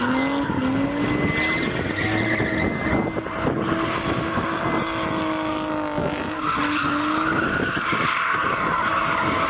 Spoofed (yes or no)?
no